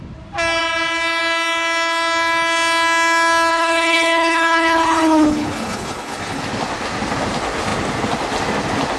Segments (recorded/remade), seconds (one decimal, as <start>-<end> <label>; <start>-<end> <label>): 0.0-3.5 recorded; 3.5-6.4 remade; 6.4-9.0 recorded